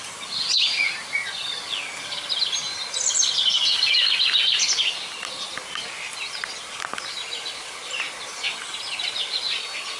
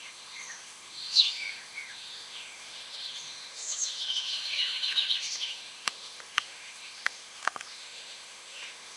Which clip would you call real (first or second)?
first